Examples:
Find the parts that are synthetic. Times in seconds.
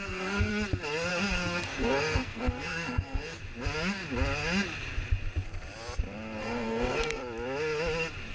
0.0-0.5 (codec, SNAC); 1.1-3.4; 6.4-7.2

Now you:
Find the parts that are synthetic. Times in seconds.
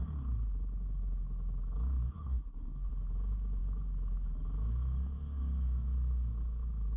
2.1-2.9 (codec, SNAC)